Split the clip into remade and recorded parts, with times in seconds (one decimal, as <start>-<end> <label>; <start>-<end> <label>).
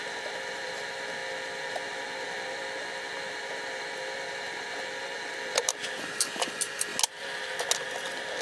0.0-8.4 recorded